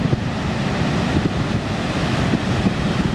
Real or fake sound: real